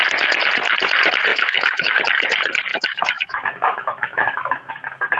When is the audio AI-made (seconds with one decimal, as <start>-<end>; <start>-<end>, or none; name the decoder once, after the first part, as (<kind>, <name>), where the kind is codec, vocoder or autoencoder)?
1.3-2.0 (autoencoder, DAC-VAE); 2.7-4.7